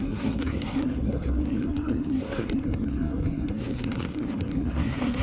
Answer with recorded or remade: remade